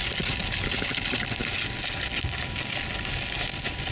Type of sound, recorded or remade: recorded